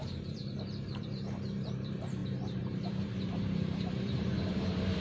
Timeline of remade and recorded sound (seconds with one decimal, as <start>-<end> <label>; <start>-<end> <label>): 0.0-5.0 remade